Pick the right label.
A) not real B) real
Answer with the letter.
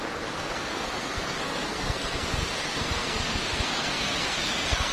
A